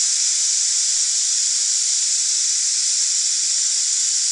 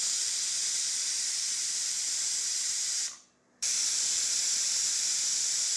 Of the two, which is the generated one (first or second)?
second